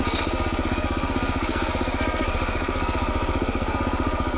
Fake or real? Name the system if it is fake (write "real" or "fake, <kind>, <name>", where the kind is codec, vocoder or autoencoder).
fake, codec, SNAC